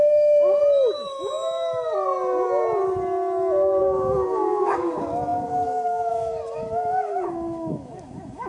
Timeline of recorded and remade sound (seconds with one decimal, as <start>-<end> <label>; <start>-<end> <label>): 0.0-0.6 remade; 0.6-3.8 recorded; 3.8-8.5 remade